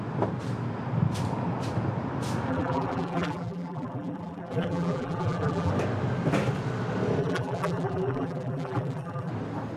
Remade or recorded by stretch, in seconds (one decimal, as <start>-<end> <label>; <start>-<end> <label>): 0.0-2.5 recorded; 2.5-5.7 remade; 5.7-7.2 recorded; 7.2-9.3 remade; 9.3-9.8 recorded